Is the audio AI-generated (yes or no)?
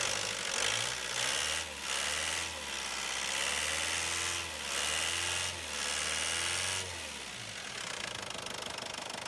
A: no